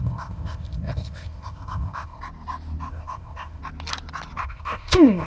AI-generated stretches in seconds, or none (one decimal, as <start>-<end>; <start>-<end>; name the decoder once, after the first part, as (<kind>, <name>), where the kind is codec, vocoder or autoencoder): 0.0-2.2 (codec, ZipCodec); 2.9-3.6; 4.4-5.3